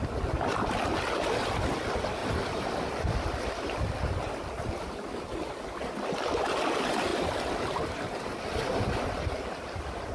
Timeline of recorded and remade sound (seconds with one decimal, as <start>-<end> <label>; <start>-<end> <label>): 0.0-2.2 recorded; 2.2-5.8 remade; 5.8-7.1 recorded; 7.1-8.4 remade; 8.4-10.1 recorded